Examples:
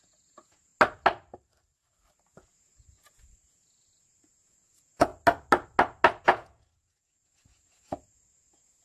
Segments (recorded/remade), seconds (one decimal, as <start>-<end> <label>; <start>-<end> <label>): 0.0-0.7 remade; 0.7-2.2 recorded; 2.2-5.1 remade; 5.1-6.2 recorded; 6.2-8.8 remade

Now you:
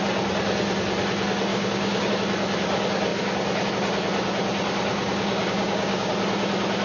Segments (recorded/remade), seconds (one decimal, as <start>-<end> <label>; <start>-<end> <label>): 0.0-1.5 recorded; 1.5-2.1 remade; 2.1-4.9 recorded; 4.9-6.1 remade; 6.1-6.8 recorded

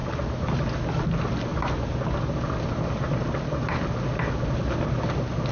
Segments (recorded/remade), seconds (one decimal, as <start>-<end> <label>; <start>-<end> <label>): 0.0-5.5 recorded

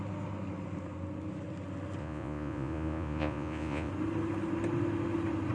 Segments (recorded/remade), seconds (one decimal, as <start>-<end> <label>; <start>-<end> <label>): 0.0-2.0 recorded; 2.0-3.9 remade; 3.9-5.5 recorded

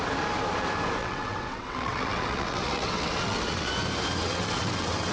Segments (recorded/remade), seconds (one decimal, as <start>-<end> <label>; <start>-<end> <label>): 0.0-1.0 recorded; 1.0-3.7 remade; 3.7-4.2 recorded; 4.2-5.1 remade

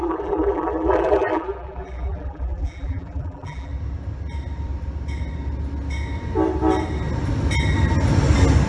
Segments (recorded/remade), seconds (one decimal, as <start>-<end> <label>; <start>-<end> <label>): 0.0-3.7 remade; 3.7-8.7 recorded

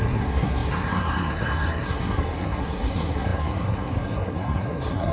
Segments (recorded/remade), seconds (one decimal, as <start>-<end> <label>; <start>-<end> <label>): 0.0-5.1 remade